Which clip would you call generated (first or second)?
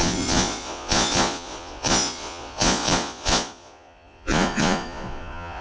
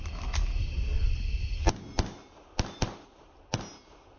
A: first